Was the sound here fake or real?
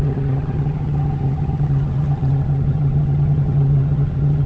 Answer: fake